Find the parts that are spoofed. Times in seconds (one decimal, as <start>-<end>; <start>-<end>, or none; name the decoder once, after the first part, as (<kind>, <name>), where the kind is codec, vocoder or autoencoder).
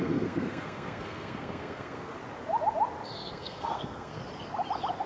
0.0-2.2 (codec, SNAC); 3.1-4.2